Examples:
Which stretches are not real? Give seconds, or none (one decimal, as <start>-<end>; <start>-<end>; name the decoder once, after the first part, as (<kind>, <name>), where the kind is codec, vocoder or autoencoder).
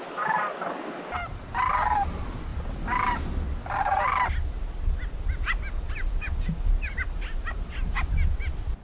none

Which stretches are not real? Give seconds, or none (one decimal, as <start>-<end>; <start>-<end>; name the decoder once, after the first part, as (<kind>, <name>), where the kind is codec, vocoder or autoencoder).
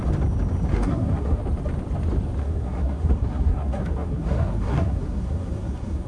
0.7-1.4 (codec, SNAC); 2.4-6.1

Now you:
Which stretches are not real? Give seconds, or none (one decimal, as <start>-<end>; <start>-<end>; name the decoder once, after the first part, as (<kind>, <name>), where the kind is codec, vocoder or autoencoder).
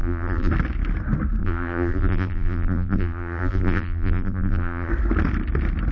0.0-0.5 (vocoder, BigVGAN v2); 1.4-4.9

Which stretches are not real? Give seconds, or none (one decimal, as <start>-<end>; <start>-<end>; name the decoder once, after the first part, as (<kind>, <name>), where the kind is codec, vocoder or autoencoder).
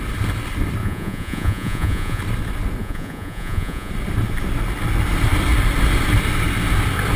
0.8-2.2 (vocoder, Vocos); 2.8-3.9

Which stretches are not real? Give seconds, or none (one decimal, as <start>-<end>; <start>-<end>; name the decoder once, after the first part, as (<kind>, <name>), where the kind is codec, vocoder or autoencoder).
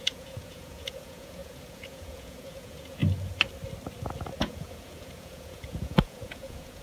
0.0-3.0 (vocoder, Vocos); 4.4-6.8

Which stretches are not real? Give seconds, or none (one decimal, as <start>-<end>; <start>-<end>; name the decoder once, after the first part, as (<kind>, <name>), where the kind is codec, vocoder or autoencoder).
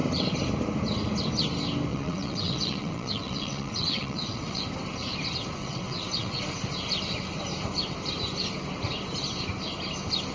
1.9-4.6 (vocoder, WaveNeXt); 5.6-6.4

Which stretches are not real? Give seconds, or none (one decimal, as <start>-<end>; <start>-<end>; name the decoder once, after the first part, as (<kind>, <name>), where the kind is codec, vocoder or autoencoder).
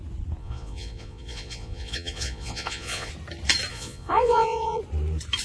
0.4-3.1 (vocoder, Vocos); 3.7-4.8